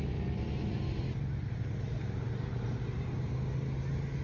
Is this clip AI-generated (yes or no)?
no